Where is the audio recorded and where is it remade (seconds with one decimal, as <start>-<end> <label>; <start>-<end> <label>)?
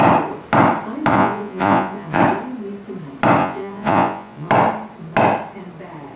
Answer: 0.0-1.1 recorded; 1.1-2.2 remade; 2.2-3.4 recorded; 3.4-4.5 remade; 4.5-6.2 recorded